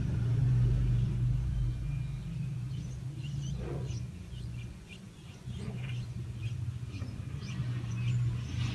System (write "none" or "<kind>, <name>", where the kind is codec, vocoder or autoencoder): vocoder, Vocos